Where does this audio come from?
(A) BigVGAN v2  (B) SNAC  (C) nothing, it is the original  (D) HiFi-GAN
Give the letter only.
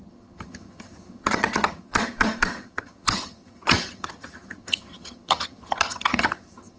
D